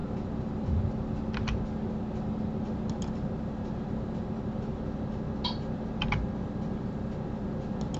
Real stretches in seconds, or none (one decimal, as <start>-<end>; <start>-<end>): 0.0-8.0